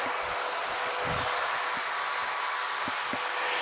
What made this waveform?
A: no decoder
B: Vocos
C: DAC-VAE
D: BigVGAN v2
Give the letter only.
A